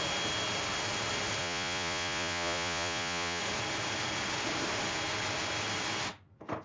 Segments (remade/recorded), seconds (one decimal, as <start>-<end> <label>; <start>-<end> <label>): 0.0-1.4 recorded; 1.4-3.4 remade; 3.4-6.6 recorded